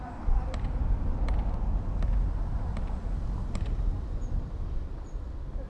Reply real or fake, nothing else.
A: real